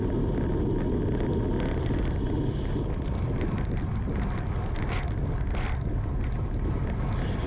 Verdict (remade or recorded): recorded